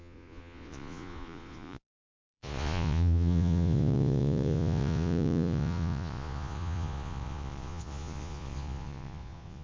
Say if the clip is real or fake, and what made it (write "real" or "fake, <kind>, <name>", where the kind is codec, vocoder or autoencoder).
fake, vocoder, Vocos